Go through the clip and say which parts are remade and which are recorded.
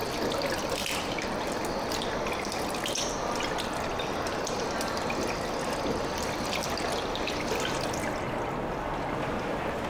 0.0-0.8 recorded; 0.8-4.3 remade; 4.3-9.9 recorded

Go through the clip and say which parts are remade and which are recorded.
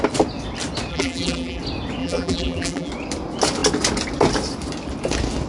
0.0-0.9 recorded; 0.9-1.6 remade; 1.6-2.0 recorded; 2.0-2.9 remade; 2.9-5.5 recorded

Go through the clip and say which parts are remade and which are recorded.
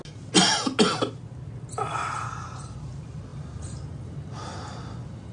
0.0-3.3 recorded; 3.3-4.1 remade; 4.1-5.3 recorded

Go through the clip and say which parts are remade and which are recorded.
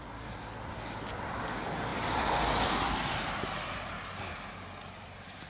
0.0-1.9 recorded; 1.9-5.5 remade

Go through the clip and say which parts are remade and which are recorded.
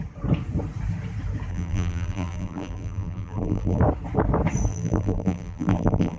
0.0-1.5 recorded; 1.5-3.8 remade; 3.8-4.7 recorded; 4.7-6.2 remade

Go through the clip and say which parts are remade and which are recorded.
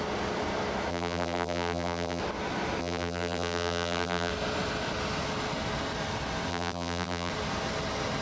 0.0-0.9 recorded; 0.9-2.2 remade; 2.2-2.8 recorded; 2.8-4.3 remade; 4.3-6.5 recorded; 6.5-7.3 remade; 7.3-8.2 recorded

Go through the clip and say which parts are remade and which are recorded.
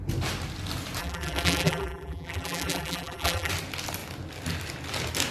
0.0-1.0 recorded; 1.0-3.5 remade; 3.5-5.3 recorded